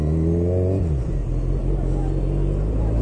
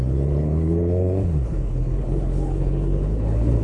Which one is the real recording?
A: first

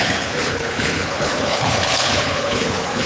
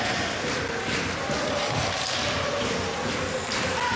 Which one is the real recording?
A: second